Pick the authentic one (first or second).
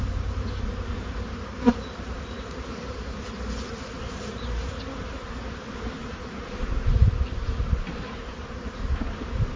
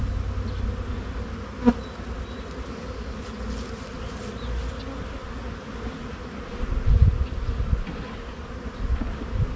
second